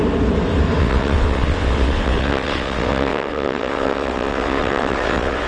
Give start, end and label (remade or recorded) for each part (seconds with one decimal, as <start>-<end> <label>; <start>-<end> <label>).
0.0-0.8 recorded; 0.8-5.5 remade